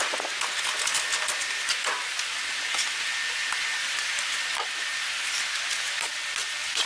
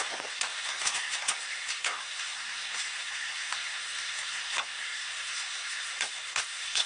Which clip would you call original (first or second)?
first